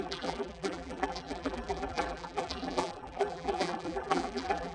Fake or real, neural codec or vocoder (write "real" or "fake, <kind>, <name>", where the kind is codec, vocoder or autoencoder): fake, vocoder, BigVGAN v2